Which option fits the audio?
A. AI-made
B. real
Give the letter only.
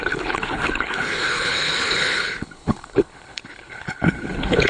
A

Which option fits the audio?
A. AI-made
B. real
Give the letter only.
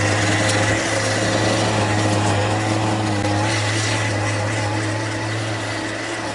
B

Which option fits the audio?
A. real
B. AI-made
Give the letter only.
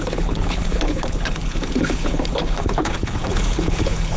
B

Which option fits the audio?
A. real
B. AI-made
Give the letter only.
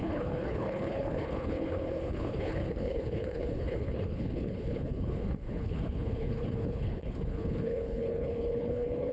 B